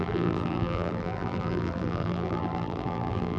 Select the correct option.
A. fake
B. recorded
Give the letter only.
A